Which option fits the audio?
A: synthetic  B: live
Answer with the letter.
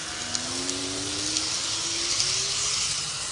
B